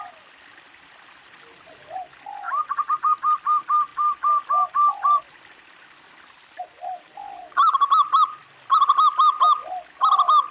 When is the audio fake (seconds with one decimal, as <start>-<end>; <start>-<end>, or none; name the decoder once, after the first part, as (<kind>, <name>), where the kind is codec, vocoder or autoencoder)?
none